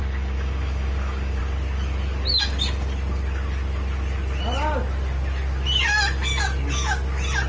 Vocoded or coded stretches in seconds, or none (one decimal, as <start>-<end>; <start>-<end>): 0.0-1.4